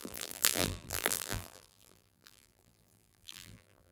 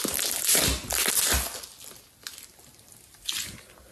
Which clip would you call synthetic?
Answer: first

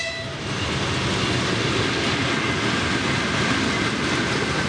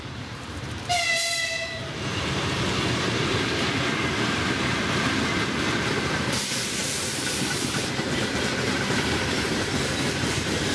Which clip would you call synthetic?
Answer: second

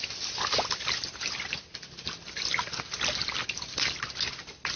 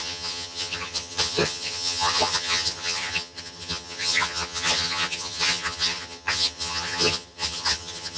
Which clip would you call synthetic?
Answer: second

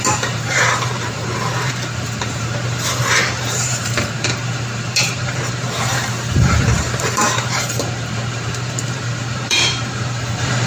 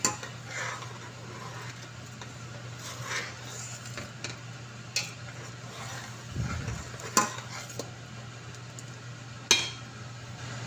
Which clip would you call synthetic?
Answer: first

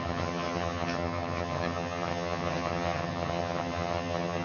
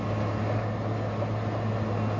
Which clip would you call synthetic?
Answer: first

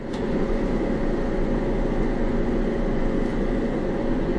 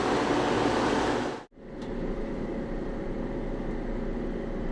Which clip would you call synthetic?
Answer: first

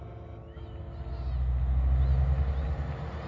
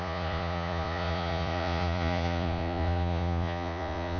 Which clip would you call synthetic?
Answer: second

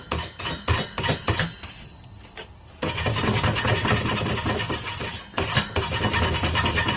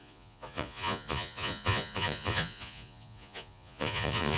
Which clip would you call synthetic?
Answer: second